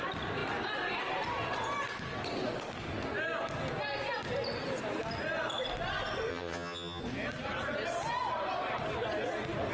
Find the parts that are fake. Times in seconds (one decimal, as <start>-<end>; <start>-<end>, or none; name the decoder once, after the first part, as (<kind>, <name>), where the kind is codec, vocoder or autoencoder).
6.3-7.0 (vocoder, HiFi-GAN)